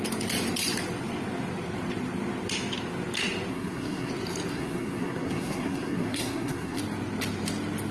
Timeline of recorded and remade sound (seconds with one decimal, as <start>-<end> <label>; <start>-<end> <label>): 0.0-3.5 recorded; 3.5-4.1 remade; 4.1-4.5 recorded; 4.5-6.8 remade; 6.8-7.9 recorded